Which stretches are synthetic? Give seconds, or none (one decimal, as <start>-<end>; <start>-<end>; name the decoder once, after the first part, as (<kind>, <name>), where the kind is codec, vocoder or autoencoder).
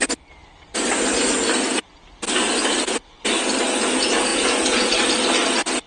4.3-4.9 (vocoder, Vocos)